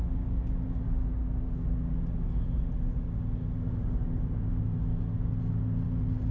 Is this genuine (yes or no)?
yes